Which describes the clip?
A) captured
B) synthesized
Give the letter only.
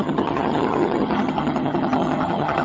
B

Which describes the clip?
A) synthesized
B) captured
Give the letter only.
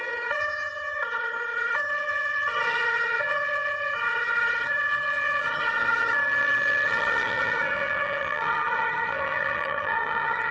A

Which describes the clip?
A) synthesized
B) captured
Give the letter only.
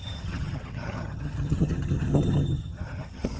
A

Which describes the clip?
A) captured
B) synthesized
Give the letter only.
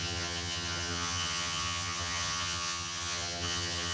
B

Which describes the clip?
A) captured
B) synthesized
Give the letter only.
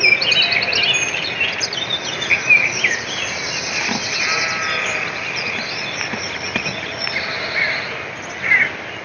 A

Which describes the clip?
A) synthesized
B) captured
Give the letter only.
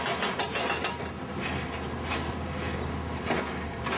B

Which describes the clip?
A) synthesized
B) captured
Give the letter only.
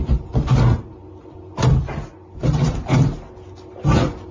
B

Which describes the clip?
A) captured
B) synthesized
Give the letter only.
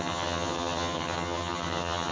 B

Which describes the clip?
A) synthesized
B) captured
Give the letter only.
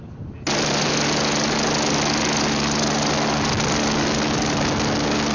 B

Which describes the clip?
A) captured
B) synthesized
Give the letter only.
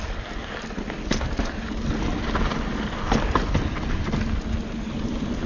A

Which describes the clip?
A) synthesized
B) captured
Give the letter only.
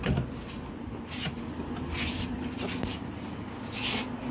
B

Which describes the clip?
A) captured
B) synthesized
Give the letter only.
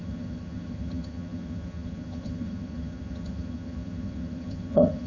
B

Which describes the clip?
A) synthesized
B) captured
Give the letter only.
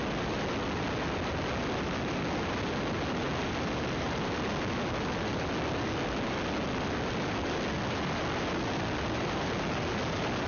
B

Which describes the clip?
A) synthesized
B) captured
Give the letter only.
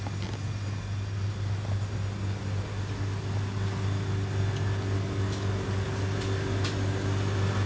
B